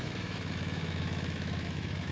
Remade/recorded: remade